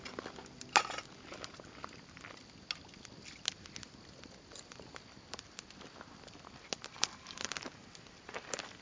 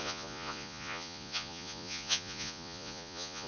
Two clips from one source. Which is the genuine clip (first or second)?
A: first